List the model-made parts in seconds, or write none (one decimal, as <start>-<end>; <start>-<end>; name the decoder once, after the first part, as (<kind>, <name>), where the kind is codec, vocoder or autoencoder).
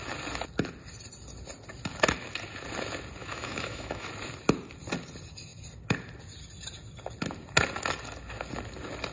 3.2-4.1 (autoencoder, DAC-VAE)